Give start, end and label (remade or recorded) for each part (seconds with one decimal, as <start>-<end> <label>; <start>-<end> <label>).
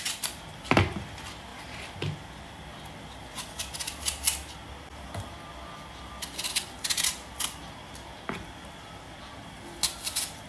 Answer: 0.0-10.5 recorded